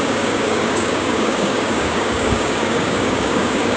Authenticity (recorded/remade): remade